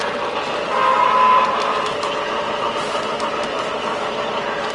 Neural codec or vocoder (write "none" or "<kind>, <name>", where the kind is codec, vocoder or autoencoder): none